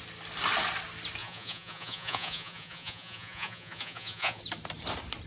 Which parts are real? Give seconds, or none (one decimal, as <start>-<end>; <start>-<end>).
0.0-1.2; 4.4-5.3